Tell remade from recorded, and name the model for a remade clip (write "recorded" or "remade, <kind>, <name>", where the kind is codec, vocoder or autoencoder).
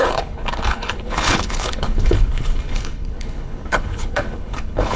remade, codec, HILCodec